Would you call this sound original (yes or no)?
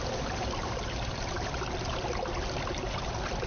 yes